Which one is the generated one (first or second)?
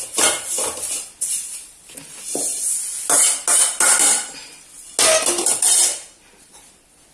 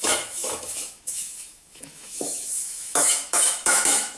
second